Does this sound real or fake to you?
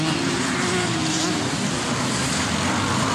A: fake